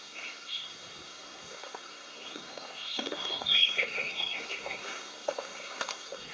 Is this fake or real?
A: fake